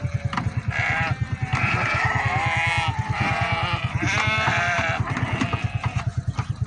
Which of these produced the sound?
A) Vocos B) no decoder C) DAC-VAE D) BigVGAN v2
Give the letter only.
B